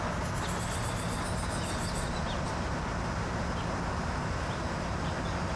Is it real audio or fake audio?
real